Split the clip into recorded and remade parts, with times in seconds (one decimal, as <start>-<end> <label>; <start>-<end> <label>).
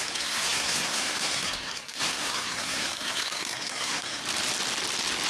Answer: 0.0-4.2 remade; 4.2-5.3 recorded